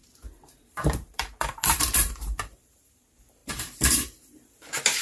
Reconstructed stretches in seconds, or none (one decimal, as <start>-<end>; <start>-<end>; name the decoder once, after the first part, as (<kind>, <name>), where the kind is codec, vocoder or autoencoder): 0.0-3.0 (vocoder, BigVGAN v2); 3.4-4.5